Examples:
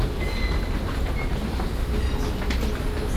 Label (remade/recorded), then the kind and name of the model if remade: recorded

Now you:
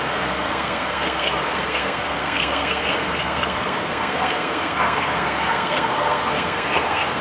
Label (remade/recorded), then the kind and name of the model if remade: remade, codec, SNAC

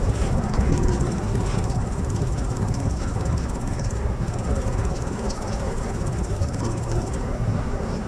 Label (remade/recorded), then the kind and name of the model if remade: remade, codec, SNAC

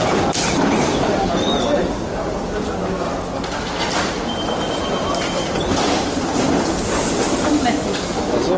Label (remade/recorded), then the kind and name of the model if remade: recorded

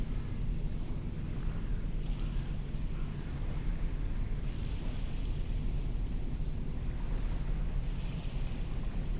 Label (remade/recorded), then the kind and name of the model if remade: recorded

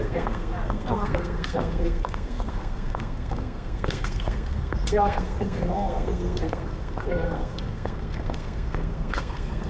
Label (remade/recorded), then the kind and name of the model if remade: remade, codec, SNAC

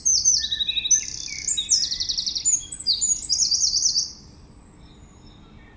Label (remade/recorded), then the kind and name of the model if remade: recorded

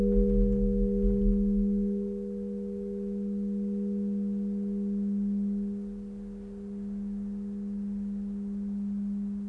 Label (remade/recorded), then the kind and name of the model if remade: recorded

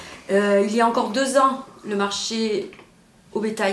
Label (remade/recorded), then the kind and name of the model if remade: recorded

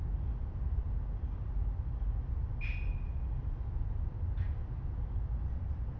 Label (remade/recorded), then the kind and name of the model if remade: recorded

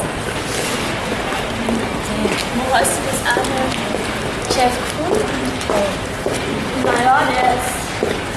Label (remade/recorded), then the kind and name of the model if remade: recorded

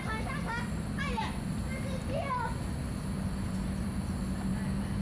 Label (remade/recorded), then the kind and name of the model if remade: recorded